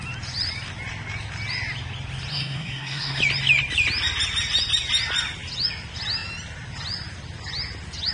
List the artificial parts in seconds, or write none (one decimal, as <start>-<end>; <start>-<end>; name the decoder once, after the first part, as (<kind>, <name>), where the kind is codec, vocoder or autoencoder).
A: 2.3-3.2 (codec, SNAC)